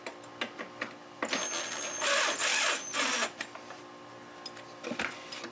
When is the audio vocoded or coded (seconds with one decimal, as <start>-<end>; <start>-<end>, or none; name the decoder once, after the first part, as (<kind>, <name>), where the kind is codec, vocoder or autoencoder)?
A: 2.5-3.8 (vocoder, BigVGAN v2)